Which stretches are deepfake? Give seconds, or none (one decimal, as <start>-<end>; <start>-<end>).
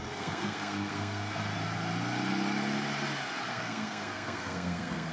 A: 0.0-1.4; 3.5-5.1